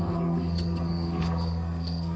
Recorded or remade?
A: remade